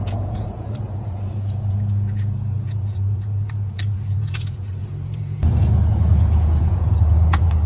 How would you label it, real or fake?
fake